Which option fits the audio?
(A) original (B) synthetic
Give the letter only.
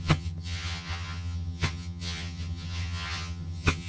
B